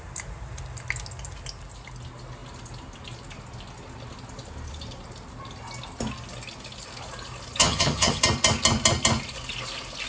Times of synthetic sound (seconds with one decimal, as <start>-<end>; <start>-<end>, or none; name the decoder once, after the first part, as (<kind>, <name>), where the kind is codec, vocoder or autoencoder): 7.6-8.2 (vocoder, HiFi-GAN)